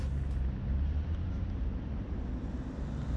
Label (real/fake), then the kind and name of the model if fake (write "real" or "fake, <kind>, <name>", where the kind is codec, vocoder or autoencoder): real